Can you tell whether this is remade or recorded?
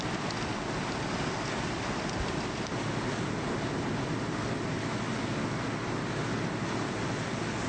recorded